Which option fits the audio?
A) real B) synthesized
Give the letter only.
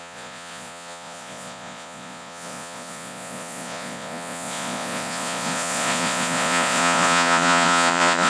B